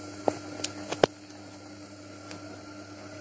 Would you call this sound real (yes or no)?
yes